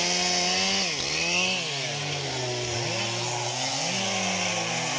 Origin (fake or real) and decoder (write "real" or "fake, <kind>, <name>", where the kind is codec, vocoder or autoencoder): real